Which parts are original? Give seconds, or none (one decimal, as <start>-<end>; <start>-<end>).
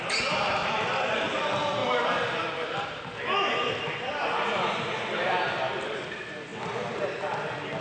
0.0-0.6; 1.4-1.8; 3.0-7.8